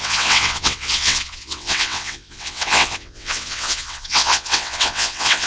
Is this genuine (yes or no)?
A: no